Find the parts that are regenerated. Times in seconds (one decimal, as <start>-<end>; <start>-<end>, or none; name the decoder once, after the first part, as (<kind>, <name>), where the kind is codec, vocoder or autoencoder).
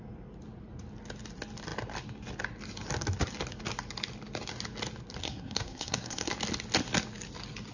5.2-6.3 (codec, SNAC)